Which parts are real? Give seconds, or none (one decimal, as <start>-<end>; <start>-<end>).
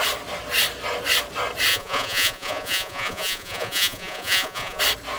0.0-1.7; 4.8-5.2